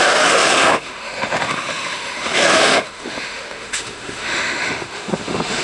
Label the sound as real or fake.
fake